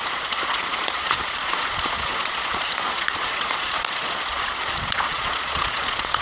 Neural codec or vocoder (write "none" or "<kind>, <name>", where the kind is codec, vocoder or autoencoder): vocoder, Vocos